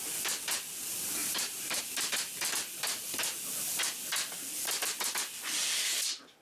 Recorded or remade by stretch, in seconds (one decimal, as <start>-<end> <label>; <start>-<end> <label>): 0.0-1.2 recorded; 1.2-1.8 remade; 1.8-6.4 recorded